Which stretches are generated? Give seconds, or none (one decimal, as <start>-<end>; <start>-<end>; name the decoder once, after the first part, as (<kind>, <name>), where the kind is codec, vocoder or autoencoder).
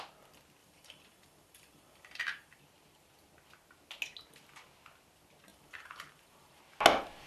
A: 0.6-2.6 (vocoder, BigVGAN v2); 5.5-6.6